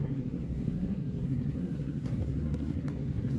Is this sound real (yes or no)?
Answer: no